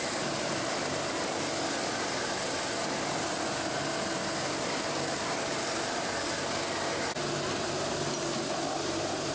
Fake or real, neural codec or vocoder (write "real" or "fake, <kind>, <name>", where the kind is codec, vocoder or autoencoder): real